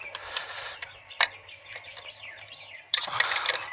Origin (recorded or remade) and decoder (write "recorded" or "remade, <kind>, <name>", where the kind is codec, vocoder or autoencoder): remade, vocoder, BigVGAN v2